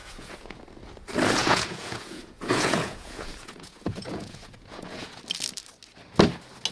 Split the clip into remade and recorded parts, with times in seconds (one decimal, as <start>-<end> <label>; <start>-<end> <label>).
0.0-0.6 remade; 0.6-1.4 recorded; 1.4-5.2 remade; 5.2-6.7 recorded